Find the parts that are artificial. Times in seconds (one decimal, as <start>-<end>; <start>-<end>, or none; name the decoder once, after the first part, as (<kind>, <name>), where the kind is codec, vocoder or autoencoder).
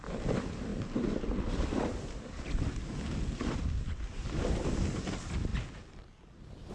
none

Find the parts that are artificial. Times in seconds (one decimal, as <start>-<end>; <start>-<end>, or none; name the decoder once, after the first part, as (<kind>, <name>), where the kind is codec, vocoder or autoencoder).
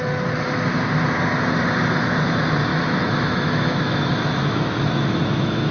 2.7-5.7 (autoencoder, DAC-VAE)